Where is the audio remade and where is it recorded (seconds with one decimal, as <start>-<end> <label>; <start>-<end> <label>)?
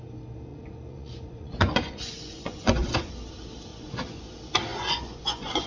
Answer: 0.0-0.5 recorded; 0.5-3.1 remade; 3.1-3.7 recorded; 3.7-4.2 remade; 4.2-4.7 recorded; 4.7-5.7 remade